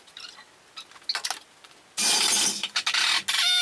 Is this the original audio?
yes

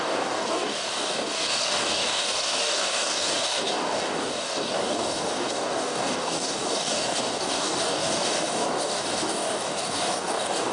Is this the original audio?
no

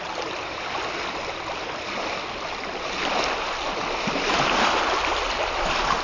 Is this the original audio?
no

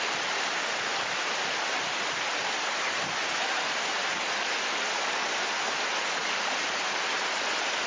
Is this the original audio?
yes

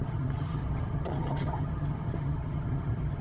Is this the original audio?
no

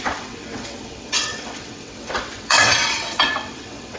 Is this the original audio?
no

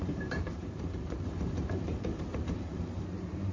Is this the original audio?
no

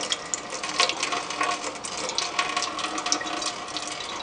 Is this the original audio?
yes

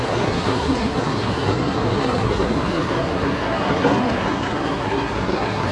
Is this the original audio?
no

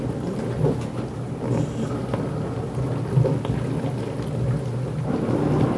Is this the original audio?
yes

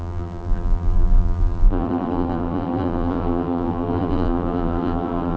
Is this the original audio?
no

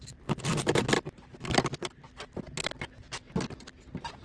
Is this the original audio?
yes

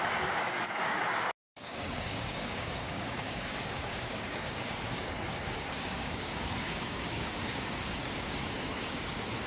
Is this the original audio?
no